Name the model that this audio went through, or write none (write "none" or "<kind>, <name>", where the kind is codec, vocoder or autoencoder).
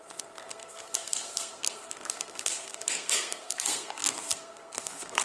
codec, SNAC